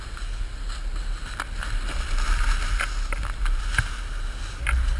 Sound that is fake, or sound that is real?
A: real